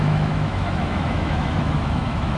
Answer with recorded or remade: remade